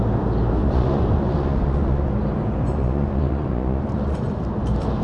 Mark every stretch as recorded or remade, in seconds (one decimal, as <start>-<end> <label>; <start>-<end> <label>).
0.0-0.6 recorded; 0.6-2.1 remade; 2.1-2.7 recorded; 2.7-4.3 remade; 4.3-5.0 recorded